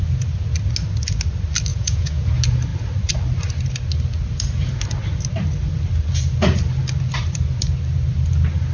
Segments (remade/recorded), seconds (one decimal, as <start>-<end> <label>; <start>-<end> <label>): 0.0-1.7 recorded; 1.7-2.3 remade; 2.3-8.7 recorded